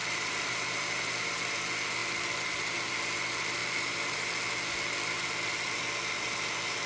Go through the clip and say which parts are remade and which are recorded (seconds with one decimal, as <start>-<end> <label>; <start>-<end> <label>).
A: 0.0-1.0 remade; 1.0-3.6 recorded; 3.6-4.3 remade; 4.3-6.9 recorded